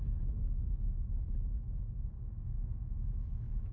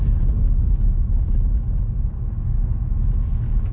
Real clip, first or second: second